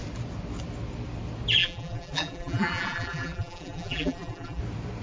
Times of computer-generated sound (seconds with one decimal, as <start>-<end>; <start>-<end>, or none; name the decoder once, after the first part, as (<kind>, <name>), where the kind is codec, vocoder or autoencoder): 1.6-4.6 (vocoder, BigVGAN v2)